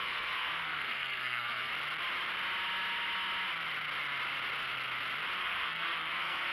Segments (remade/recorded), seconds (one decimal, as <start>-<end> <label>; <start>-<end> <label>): 0.0-1.7 remade; 1.7-5.4 recorded; 5.4-6.5 remade